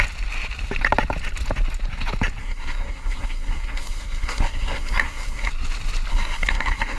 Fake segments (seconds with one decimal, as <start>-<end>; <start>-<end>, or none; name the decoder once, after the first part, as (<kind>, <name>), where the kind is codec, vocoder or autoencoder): 2.4-5.5 (codec, SNAC); 6.1-7.0